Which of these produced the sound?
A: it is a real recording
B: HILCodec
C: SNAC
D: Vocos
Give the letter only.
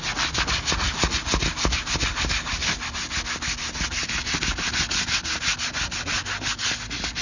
A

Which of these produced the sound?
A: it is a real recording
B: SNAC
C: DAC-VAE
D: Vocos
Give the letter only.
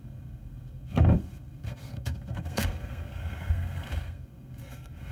B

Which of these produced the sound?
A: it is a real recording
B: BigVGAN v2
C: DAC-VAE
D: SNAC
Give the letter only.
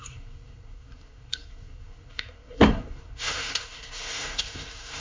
D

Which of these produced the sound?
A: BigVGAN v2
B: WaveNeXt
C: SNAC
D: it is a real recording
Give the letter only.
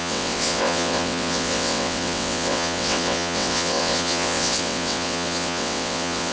B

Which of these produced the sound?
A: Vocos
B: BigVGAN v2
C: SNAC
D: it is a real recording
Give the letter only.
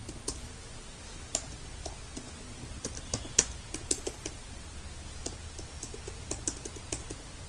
D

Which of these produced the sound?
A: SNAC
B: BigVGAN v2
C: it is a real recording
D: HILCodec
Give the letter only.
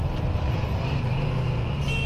C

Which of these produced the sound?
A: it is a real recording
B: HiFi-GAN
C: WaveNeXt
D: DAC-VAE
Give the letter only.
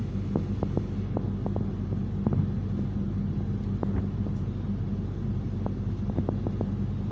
A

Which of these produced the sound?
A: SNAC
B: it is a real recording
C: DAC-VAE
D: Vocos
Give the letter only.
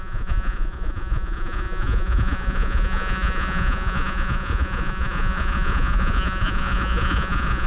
D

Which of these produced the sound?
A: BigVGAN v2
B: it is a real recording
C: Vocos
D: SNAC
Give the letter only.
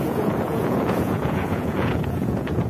C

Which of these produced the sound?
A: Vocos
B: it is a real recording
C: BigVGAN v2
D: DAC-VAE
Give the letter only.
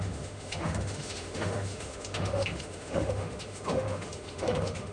D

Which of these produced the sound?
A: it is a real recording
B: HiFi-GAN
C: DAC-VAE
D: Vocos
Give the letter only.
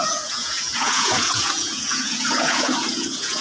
D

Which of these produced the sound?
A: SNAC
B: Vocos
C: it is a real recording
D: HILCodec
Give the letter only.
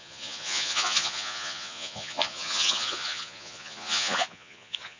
B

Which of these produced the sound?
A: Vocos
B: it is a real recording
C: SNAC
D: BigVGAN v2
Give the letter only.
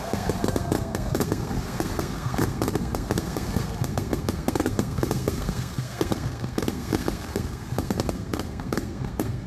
C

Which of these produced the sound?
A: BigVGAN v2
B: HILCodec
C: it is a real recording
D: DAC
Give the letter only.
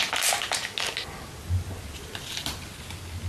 C